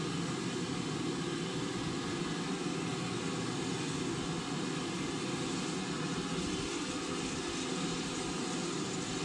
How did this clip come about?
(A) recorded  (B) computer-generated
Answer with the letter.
A